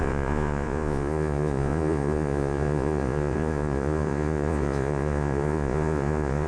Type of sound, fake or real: fake